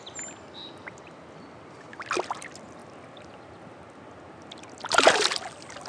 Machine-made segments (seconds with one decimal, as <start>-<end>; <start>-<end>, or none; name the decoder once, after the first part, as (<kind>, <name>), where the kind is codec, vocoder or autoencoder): none